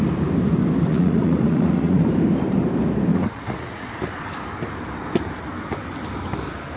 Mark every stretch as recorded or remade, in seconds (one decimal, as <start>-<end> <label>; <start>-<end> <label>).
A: 0.0-0.9 recorded; 0.9-2.0 remade; 2.0-3.1 recorded; 3.1-3.9 remade; 3.9-6.8 recorded